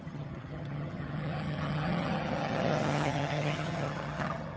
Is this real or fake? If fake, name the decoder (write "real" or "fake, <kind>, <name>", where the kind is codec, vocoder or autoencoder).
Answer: fake, vocoder, HiFi-GAN